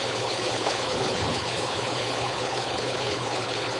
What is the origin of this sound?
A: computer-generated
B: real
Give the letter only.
A